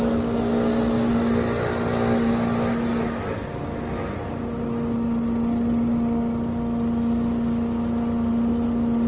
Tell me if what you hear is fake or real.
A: real